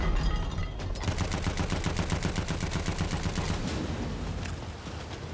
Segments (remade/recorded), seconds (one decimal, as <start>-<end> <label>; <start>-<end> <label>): 0.0-5.3 recorded